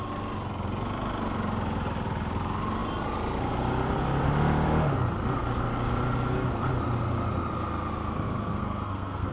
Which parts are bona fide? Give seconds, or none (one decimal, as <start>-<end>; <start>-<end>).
0.0-8.4